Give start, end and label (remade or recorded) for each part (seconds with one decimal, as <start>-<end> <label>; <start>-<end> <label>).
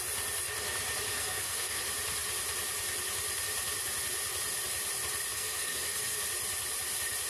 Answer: 0.0-1.1 recorded; 1.1-1.8 remade; 1.8-5.3 recorded; 5.3-6.2 remade; 6.2-7.3 recorded